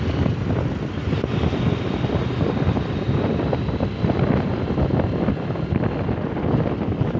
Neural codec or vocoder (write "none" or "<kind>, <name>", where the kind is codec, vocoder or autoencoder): none